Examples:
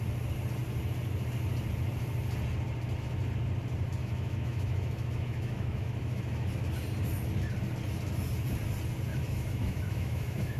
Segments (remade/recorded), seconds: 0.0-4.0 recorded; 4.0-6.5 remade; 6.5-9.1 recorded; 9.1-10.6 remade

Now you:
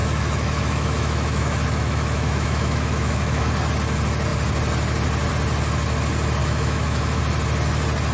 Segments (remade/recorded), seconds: 0.0-3.5 remade; 3.5-6.4 recorded; 6.4-7.2 remade; 7.2-8.1 recorded

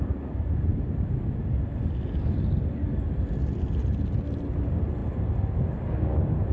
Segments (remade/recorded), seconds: 0.0-6.5 recorded